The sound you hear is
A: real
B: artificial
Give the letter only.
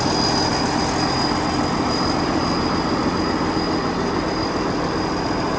A